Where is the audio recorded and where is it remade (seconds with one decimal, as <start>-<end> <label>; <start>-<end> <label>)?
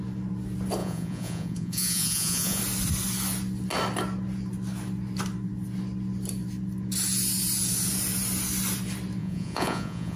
0.0-0.8 recorded; 0.8-2.6 remade; 2.6-9.2 recorded; 9.2-10.2 remade